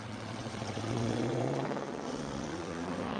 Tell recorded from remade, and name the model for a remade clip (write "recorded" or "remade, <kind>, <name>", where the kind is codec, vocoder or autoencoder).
remade, vocoder, WaveNeXt